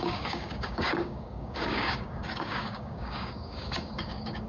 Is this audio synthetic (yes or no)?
yes